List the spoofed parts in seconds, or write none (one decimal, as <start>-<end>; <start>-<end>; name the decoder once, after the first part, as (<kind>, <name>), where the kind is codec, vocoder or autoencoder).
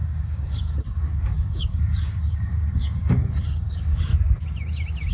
0.0-4.1 (codec, DAC)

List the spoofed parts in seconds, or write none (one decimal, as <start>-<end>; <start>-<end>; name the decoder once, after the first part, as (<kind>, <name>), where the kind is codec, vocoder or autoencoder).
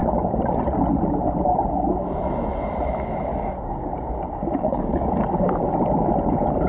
3.3-5.1 (codec, DAC)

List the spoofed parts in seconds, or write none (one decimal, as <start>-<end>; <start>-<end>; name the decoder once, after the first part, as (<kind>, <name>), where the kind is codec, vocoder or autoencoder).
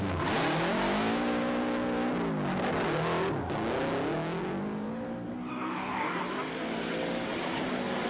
5.5-6.2 (codec, DAC)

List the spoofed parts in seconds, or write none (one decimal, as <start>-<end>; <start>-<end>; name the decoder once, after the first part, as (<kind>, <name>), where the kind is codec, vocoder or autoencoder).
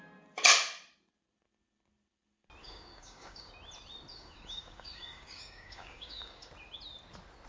2.6-3.5 (codec, DAC); 4.1-6.5